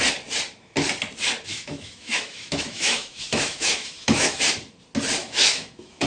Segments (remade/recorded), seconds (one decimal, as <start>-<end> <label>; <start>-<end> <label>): 0.0-1.5 recorded; 1.5-4.4 remade; 4.4-5.2 recorded; 5.2-6.1 remade